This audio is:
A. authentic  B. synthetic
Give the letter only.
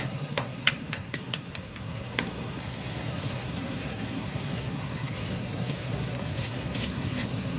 B